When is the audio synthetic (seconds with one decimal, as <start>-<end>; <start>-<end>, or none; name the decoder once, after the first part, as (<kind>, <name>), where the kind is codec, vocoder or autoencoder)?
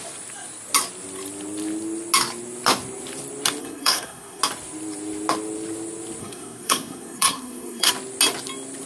3.6-4.4 (codec, SNAC); 6.2-7.9